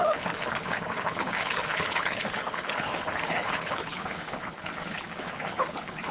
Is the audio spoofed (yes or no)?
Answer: yes